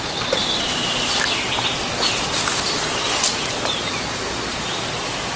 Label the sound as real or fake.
real